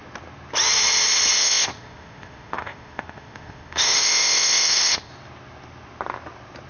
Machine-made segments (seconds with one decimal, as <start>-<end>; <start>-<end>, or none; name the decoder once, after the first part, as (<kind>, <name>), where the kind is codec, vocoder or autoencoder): 1.4-5.1 (codec, ZipCodec)